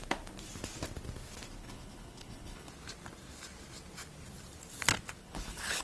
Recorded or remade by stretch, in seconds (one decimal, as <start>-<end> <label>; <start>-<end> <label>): 0.0-1.6 recorded; 1.6-2.7 remade; 2.7-5.2 recorded; 5.2-5.8 remade